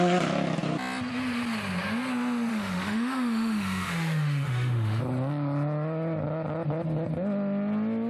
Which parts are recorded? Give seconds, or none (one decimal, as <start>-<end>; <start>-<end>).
0.0-2.5; 5.0-8.1